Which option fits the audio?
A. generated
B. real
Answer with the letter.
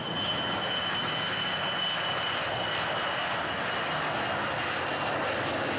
B